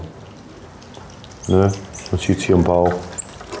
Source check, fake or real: real